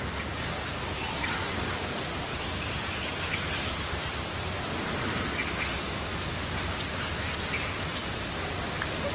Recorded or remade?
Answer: recorded